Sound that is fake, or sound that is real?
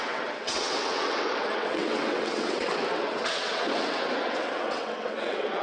fake